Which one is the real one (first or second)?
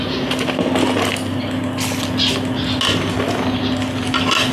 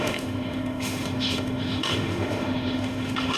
first